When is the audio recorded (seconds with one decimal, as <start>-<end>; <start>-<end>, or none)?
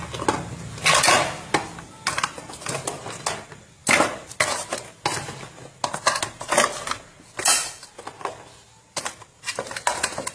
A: 0.0-10.3